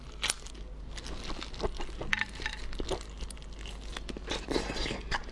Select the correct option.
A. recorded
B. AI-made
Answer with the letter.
A